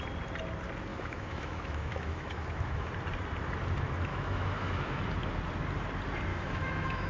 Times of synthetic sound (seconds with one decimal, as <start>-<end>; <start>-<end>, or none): 0.9-2.9; 4.1-5.0; 6.3-7.1